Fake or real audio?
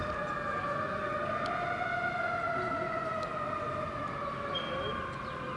real